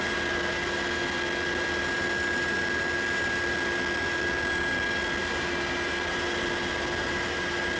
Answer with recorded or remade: recorded